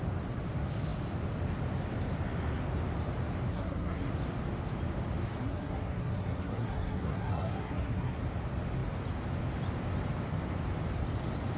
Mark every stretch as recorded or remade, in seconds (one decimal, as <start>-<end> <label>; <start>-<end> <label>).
0.0-3.5 recorded; 3.5-4.1 remade; 4.1-5.4 recorded; 5.4-8.2 remade; 8.2-11.6 recorded